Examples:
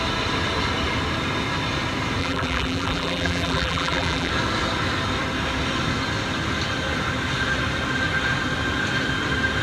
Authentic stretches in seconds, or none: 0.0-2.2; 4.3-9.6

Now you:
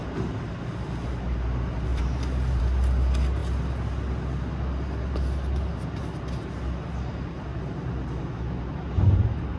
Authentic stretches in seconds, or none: 0.0-1.9; 2.6-9.6

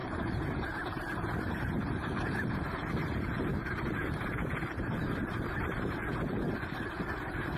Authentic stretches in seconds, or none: none

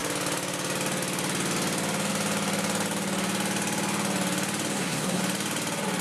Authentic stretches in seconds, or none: 0.0-4.7; 5.2-6.0

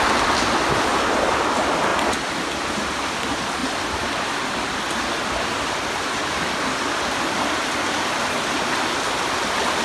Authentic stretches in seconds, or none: 0.0-9.8

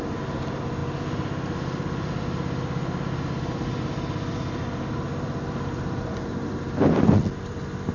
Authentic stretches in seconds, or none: 0.0-7.9

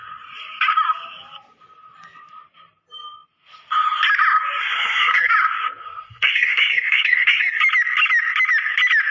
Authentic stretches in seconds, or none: 0.0-4.6; 5.3-5.8; 7.6-9.1